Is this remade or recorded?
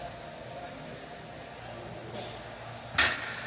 recorded